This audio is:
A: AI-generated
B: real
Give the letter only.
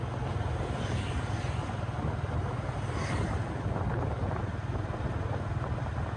B